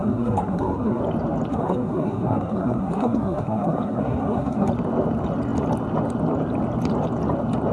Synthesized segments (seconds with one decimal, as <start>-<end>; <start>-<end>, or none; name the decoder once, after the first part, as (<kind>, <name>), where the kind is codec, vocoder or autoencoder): 0.0-1.0 (codec, SNAC); 1.5-4.7